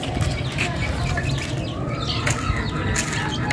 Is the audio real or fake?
real